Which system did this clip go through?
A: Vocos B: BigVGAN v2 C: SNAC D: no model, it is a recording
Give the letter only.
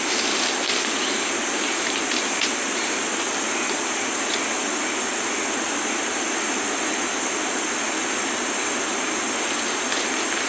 D